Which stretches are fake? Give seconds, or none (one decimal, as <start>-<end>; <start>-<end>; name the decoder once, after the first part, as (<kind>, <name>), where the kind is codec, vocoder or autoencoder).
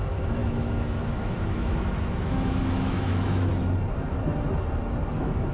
0.0-3.5 (autoencoder, DAC-VAE); 5.1-5.5